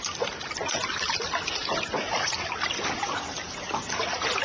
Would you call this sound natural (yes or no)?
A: yes